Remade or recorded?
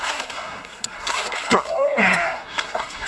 remade